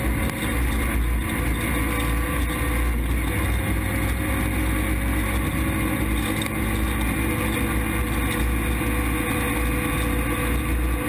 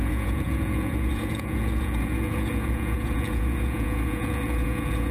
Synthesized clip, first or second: second